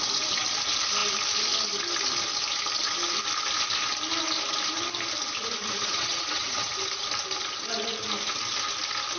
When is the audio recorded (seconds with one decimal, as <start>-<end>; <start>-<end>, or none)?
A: 0.0-5.9; 6.7-9.2